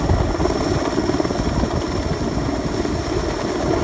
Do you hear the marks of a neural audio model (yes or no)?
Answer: no